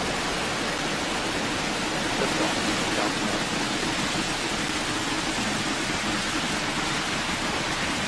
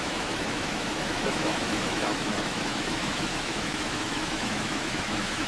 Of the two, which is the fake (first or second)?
second